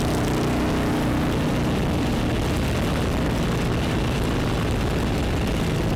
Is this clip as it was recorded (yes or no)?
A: yes